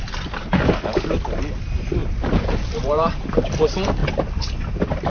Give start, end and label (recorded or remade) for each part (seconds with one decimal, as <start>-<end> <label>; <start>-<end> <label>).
0.0-2.0 recorded; 2.0-3.3 remade; 3.3-5.1 recorded